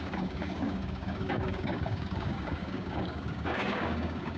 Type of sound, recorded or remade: remade